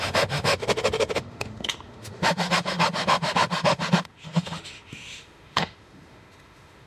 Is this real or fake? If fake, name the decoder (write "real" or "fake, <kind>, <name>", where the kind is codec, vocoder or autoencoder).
fake, autoencoder, DAC-VAE